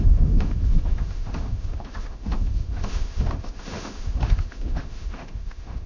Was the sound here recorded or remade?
remade